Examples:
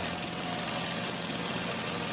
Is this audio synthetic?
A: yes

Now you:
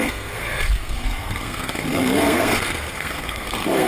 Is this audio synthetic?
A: yes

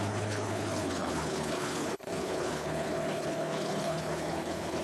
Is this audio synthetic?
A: yes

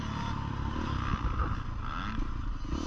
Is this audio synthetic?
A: no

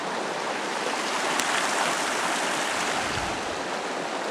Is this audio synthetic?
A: no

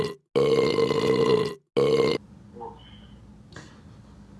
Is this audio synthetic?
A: no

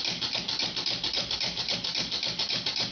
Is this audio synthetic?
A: no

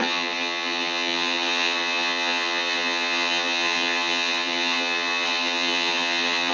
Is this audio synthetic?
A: yes